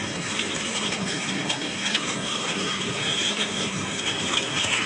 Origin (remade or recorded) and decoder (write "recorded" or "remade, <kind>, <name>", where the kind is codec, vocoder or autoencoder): remade, codec, SNAC